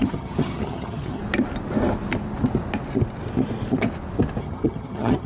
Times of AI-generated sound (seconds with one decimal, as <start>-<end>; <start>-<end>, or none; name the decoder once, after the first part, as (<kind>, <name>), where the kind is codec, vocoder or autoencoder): 0.0-1.2 (vocoder, HiFi-GAN); 4.4-5.3